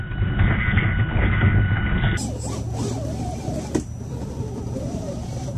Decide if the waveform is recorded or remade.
recorded